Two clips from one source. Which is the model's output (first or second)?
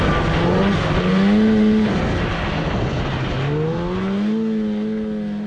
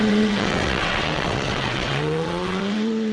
second